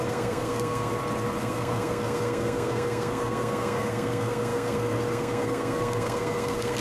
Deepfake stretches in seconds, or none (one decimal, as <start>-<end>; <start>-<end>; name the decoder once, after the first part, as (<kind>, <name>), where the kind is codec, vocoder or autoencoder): 0.0-0.9 (codec, SNAC); 1.4-6.8